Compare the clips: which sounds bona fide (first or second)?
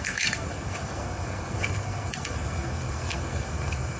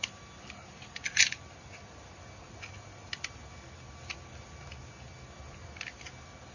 second